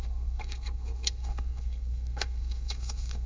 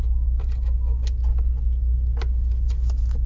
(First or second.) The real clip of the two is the second